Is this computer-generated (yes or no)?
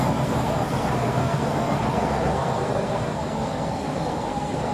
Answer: yes